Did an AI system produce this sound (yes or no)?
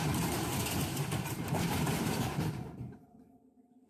yes